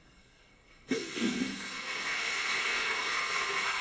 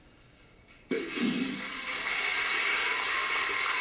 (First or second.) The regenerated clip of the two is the first